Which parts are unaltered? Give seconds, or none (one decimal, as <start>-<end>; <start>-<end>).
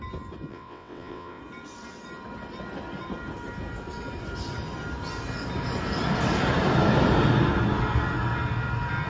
0.0-0.5; 1.4-9.1